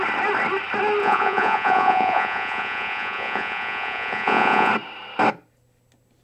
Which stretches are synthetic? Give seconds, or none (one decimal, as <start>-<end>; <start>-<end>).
1.0-4.7